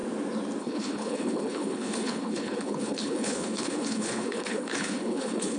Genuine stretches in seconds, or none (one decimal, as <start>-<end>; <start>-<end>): 0.0-0.6